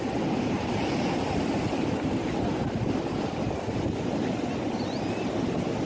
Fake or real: real